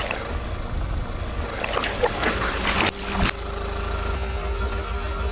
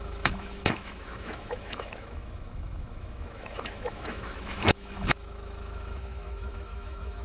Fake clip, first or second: second